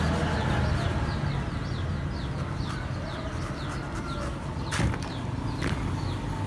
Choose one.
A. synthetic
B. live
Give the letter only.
B